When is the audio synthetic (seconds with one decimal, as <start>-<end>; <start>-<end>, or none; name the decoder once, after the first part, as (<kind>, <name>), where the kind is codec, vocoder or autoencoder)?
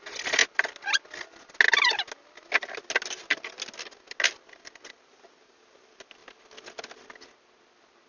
none